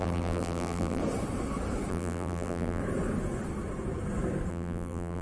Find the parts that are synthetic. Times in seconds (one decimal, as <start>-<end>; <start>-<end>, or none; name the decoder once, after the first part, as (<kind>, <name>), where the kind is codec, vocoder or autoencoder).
0.0-1.0 (vocoder, BigVGAN v2); 1.9-2.8; 4.5-5.2